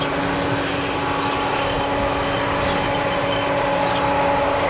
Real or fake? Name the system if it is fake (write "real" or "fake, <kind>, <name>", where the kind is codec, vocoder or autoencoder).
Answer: real